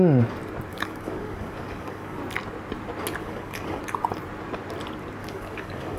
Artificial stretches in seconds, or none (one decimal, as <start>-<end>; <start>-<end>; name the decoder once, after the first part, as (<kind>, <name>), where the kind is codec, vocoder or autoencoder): 0.7-2.2 (codec, DAC); 3.2-3.8; 5.2-6.0